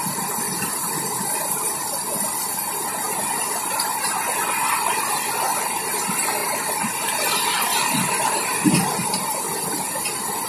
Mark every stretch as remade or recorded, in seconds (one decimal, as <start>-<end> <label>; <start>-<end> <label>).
0.0-2.4 remade; 2.4-6.4 recorded; 6.4-9.2 remade; 9.2-10.5 recorded